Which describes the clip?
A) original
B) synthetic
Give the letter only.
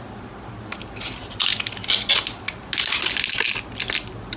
A